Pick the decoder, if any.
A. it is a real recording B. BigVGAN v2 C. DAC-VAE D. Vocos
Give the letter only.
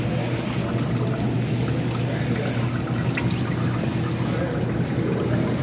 A